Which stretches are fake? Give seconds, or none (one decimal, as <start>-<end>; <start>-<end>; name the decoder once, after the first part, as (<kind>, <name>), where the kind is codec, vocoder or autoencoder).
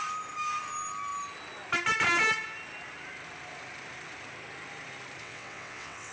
5.2-6.1 (vocoder, WaveNeXt)